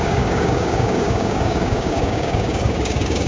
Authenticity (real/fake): fake